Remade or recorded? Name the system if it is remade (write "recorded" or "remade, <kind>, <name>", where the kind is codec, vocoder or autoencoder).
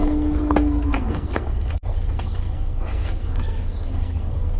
remade, codec, SNAC